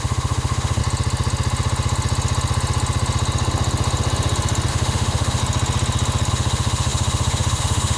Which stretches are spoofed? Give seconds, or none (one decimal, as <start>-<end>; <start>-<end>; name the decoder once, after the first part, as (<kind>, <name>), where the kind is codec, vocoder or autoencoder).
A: 0.0-0.8 (autoencoder, DAC-VAE); 4.7-5.4; 6.3-8.0